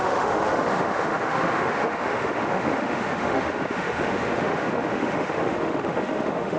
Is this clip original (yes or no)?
no